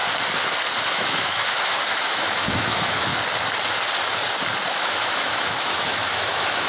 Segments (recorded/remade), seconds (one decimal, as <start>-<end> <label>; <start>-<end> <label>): 0.0-0.9 recorded; 0.9-3.1 remade; 3.1-4.7 recorded; 4.7-6.7 remade